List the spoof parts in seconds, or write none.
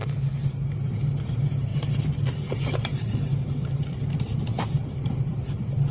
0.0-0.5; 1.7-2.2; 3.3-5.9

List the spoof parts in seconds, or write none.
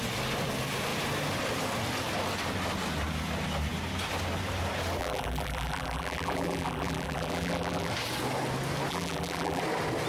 5.0-7.9; 8.9-9.6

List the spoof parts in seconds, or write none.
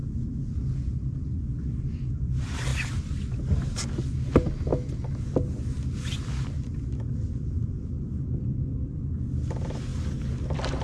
1.8-2.7; 4.3-4.7; 7.7-9.9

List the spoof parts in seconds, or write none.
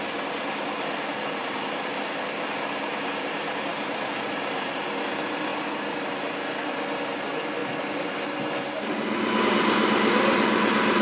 3.7-4.3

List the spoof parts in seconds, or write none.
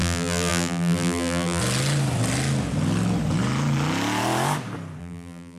0.0-1.6; 5.0-5.6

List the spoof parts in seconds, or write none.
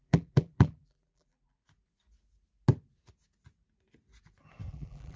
0.0-1.6; 4.7-5.2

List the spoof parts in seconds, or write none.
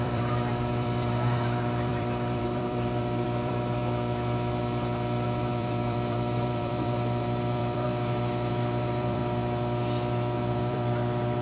0.0-3.8; 5.5-7.9; 8.5-9.2; 10.6-11.4